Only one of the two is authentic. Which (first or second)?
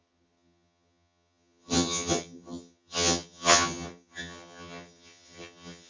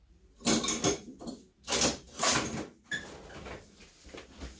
second